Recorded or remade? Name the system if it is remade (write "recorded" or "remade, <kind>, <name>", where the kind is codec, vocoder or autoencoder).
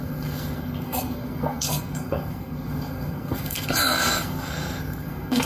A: remade, codec, SNAC